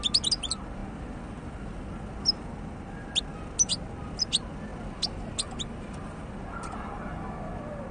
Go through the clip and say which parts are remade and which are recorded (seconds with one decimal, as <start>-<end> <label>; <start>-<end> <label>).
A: 0.0-7.9 recorded